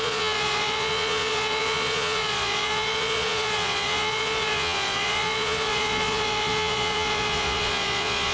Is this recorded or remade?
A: remade